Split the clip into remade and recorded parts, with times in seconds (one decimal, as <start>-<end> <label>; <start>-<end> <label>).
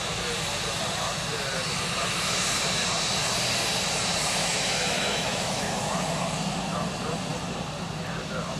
0.0-4.4 recorded; 4.4-5.9 remade; 5.9-8.6 recorded